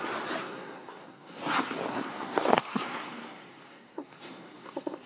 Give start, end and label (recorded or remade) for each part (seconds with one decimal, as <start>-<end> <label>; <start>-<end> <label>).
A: 0.0-0.4 recorded; 0.4-1.4 remade; 1.4-1.9 recorded; 1.9-5.1 remade